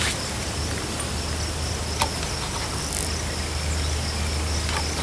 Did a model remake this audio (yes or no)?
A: no